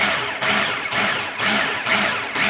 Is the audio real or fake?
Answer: real